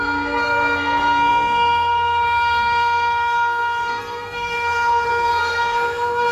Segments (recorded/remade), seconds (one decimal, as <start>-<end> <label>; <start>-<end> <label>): 0.0-6.3 remade